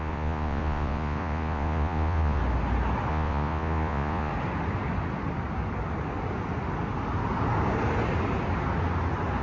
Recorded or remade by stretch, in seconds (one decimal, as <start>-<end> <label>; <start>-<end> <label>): 0.0-2.4 remade; 2.4-3.1 recorded; 3.1-4.3 remade; 4.3-9.4 recorded